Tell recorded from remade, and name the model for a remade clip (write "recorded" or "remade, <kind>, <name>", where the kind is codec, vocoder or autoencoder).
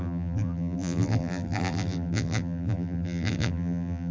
remade, vocoder, BigVGAN v2